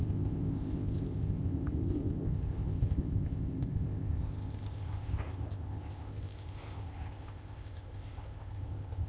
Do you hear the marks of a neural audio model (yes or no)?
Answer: yes